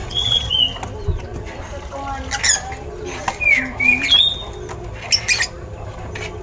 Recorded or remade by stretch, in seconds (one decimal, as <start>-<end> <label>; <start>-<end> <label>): 0.0-0.5 remade; 0.5-6.4 recorded